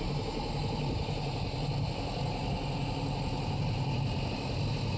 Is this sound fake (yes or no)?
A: no